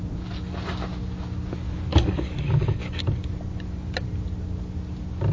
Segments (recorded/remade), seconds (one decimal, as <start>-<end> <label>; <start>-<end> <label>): 0.0-1.9 recorded; 1.9-3.0 remade; 3.0-5.3 recorded